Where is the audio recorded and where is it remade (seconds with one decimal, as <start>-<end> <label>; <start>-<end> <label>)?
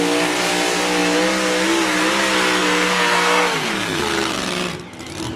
0.0-2.6 recorded; 2.6-4.0 remade; 4.0-5.4 recorded